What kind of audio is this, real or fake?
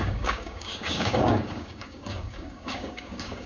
fake